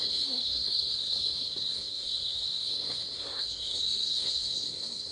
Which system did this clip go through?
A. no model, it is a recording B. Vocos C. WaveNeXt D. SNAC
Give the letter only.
D